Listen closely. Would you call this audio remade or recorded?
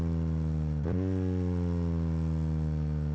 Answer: recorded